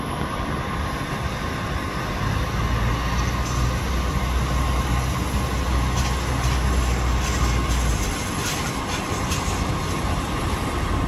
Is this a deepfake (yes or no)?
no